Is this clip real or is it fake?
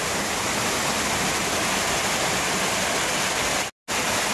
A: real